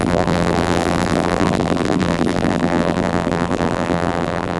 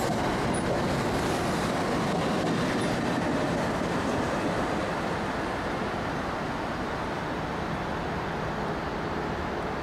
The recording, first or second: second